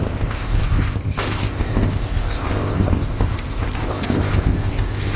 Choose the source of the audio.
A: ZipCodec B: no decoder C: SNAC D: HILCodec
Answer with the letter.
A